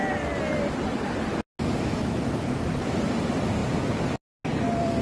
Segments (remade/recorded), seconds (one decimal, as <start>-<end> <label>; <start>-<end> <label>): 0.0-5.0 recorded